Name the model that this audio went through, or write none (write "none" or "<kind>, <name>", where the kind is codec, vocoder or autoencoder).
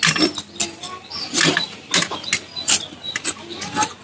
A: none